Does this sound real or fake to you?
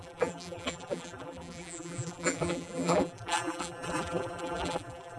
fake